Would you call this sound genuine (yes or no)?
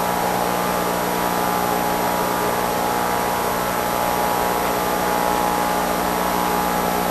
yes